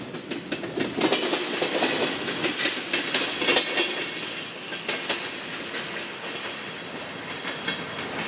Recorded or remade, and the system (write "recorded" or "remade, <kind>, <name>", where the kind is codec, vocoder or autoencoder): recorded